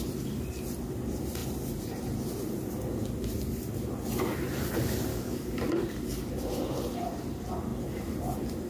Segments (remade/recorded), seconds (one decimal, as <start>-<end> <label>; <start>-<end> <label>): 0.0-5.1 recorded; 5.1-5.8 remade; 5.8-8.7 recorded